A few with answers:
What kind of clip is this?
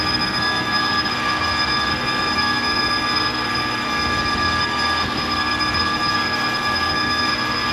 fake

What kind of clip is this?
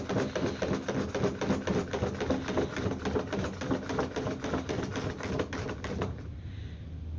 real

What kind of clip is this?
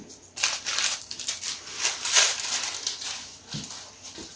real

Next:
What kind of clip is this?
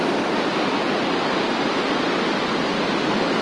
real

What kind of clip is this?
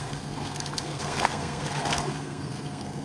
fake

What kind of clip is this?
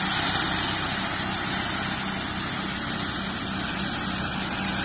real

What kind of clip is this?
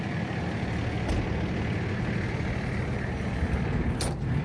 real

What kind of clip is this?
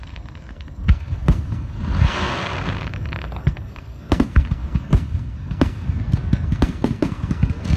fake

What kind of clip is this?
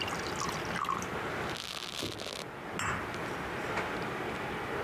real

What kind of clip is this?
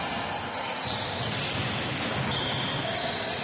real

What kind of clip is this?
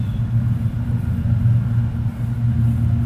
real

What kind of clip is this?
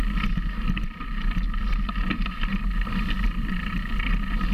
real